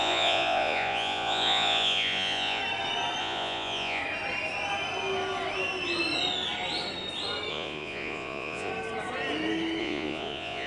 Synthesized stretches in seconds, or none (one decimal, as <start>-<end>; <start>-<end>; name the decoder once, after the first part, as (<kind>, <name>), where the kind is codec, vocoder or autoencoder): 0.0-2.6 (vocoder, Vocos); 3.2-4.0; 7.5-8.7; 9.8-10.7